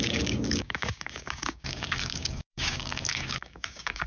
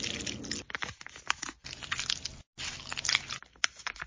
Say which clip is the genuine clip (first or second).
second